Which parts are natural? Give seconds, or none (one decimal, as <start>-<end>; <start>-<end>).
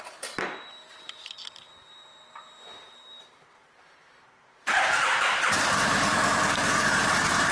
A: 4.1-4.8